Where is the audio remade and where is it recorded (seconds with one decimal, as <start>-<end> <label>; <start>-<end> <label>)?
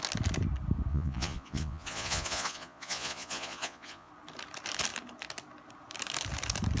0.0-0.9 recorded; 0.9-4.1 remade; 4.1-6.8 recorded